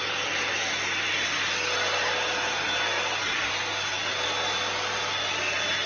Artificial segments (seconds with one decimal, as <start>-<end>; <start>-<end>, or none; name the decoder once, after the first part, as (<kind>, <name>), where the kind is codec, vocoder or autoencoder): none